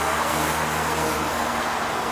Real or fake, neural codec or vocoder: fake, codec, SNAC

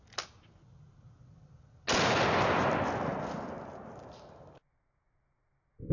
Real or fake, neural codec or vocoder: real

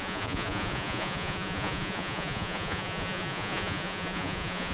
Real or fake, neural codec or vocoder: fake, vocoder, Vocos